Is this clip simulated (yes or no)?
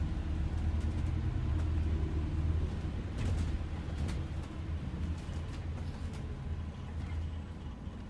no